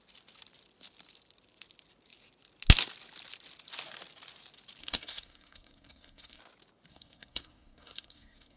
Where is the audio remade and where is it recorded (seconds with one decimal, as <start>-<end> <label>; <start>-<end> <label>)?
0.0-4.8 recorded; 4.8-6.4 remade; 6.4-6.9 recorded; 6.9-8.6 remade